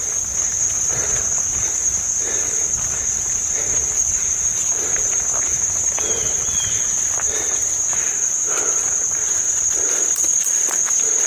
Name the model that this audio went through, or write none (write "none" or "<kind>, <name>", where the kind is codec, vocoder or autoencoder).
none